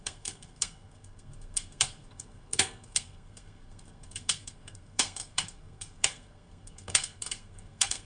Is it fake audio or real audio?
fake